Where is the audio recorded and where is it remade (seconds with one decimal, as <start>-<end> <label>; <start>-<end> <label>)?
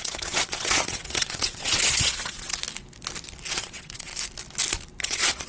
0.0-2.6 remade; 2.6-3.5 recorded; 3.5-4.1 remade; 4.1-5.0 recorded; 5.0-5.5 remade